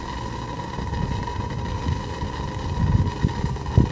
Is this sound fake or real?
real